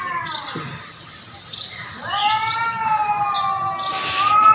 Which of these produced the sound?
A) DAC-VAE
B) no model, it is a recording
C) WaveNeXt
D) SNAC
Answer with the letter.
B